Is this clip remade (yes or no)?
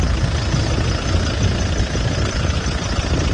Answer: no